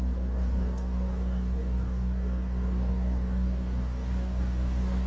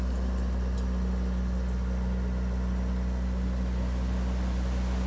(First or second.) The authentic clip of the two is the second